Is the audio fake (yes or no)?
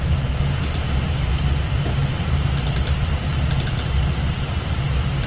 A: no